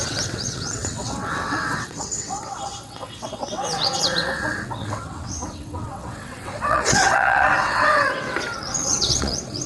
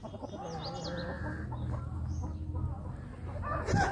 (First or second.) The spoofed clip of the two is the first